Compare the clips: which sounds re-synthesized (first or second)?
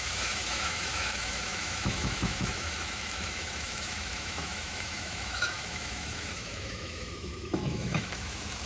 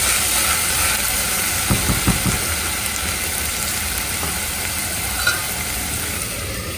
first